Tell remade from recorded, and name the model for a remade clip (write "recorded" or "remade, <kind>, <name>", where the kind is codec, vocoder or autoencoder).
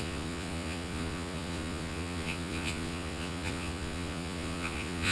remade, vocoder, Vocos